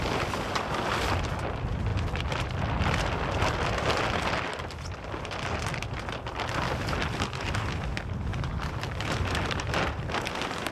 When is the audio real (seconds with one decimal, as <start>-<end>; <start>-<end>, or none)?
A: 0.0-8.3